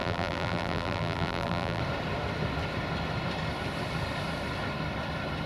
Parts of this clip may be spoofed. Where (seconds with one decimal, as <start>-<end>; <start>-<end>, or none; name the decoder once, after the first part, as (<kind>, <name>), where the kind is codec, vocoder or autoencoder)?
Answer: 0.0-1.8 (vocoder, BigVGAN v2)

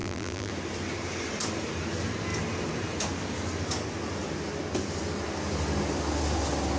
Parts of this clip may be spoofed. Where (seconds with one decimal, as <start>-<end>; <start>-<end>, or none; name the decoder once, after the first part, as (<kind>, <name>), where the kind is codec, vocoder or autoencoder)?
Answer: 0.0-0.5 (vocoder, BigVGAN v2)

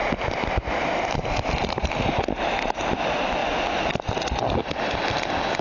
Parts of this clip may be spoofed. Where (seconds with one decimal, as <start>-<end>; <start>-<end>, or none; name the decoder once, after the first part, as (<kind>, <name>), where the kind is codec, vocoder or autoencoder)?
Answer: none

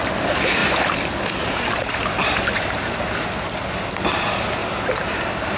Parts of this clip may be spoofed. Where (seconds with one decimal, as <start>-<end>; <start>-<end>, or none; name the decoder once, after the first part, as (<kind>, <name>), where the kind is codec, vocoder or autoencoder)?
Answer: 4.6-5.6 (vocoder, BigVGAN v2)

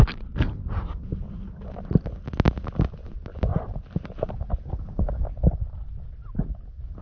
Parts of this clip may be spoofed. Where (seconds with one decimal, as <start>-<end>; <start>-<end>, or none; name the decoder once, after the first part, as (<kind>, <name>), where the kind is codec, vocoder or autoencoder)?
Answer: 3.5-4.5 (vocoder, BigVGAN v2)